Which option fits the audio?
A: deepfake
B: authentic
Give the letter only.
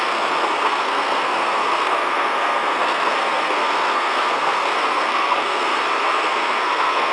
A